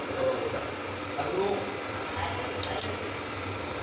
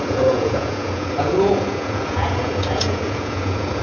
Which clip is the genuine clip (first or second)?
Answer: first